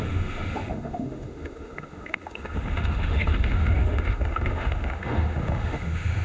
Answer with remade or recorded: remade